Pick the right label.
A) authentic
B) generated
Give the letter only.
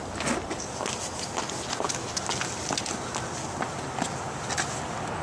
A